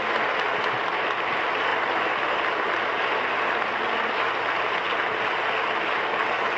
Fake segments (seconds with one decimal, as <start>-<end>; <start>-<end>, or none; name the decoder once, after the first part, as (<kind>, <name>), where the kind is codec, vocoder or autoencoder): none

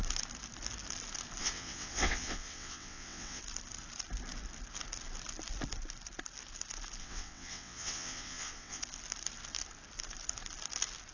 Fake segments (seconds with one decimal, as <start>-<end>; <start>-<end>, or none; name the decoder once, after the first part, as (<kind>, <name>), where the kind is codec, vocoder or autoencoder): 1.4-3.4 (vocoder, WaveNeXt); 7.0-8.8

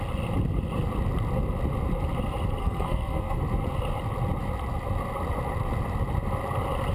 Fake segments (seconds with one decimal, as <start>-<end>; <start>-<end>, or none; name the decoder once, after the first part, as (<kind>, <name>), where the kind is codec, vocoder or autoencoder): 2.6-3.4 (codec, SNAC)

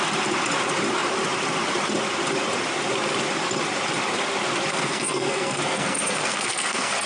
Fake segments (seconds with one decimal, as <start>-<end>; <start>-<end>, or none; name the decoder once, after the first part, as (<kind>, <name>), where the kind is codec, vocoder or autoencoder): 4.7-7.1 (codec, SNAC)

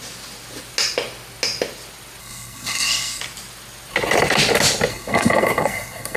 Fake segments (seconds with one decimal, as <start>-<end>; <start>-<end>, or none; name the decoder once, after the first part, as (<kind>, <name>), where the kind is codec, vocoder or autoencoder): 2.2-3.2 (codec, SNAC); 4.9-6.2